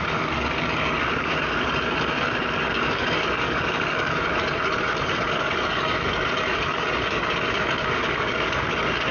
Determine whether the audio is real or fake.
fake